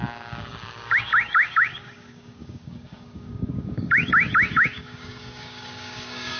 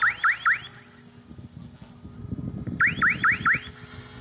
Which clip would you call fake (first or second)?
first